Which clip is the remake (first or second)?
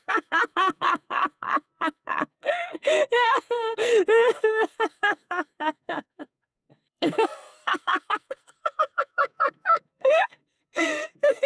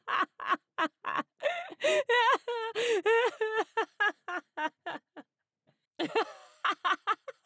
first